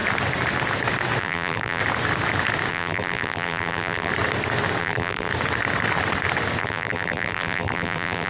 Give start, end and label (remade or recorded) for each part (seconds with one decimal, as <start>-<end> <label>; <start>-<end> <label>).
0.0-1.2 recorded; 1.2-1.8 remade; 1.8-2.7 recorded; 2.7-4.1 remade; 4.1-4.8 recorded; 4.8-5.3 remade; 5.3-6.6 recorded; 6.6-8.3 remade